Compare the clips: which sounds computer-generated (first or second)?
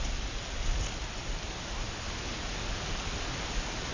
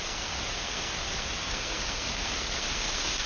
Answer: second